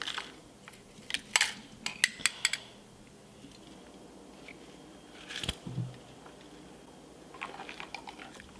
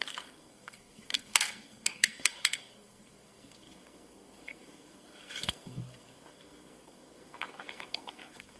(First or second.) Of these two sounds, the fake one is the second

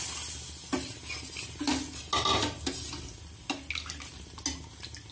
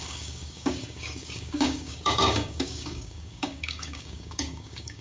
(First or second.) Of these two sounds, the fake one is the second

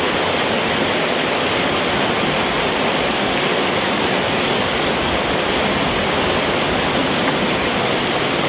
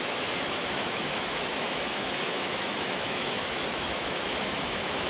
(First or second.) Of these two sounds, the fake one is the second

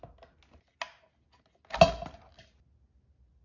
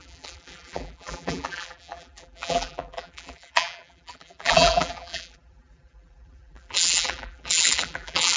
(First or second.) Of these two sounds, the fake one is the second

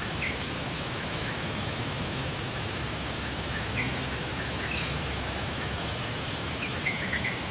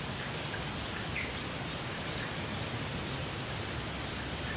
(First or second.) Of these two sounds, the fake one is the first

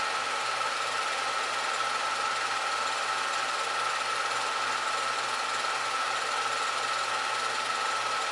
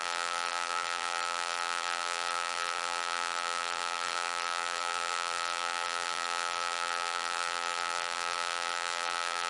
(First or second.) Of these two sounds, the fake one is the second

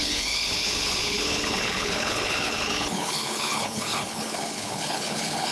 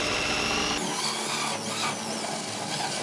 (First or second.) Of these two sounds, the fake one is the first